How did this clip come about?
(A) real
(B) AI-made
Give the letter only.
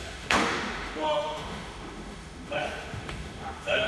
B